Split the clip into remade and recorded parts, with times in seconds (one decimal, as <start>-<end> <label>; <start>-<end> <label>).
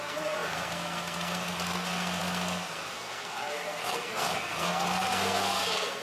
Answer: 0.0-6.0 remade